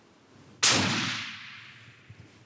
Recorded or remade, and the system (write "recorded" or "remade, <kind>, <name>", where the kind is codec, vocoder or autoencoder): recorded